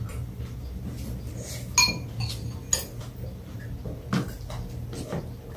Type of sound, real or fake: real